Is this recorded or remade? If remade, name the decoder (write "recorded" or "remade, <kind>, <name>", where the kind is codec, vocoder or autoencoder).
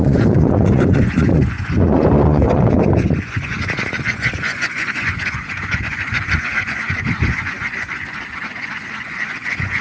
remade, vocoder, Vocos